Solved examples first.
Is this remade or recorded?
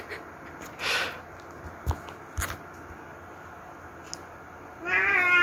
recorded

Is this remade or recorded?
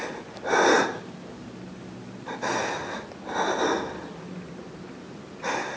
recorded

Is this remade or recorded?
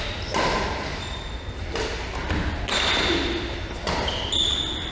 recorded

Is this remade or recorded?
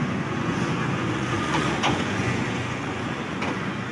remade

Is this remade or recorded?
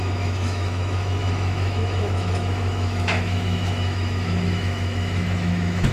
remade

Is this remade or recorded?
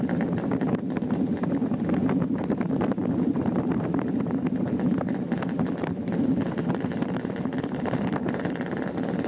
remade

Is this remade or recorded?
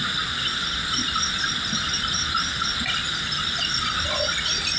recorded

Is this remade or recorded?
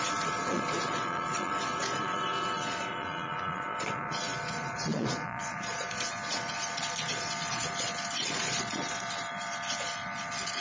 remade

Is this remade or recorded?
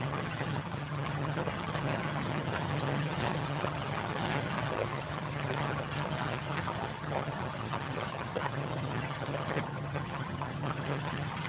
remade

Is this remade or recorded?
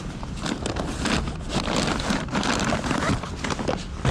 recorded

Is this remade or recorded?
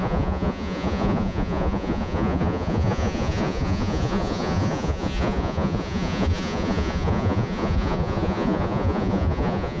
remade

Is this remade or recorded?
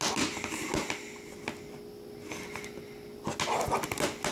recorded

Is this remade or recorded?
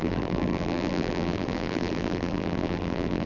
remade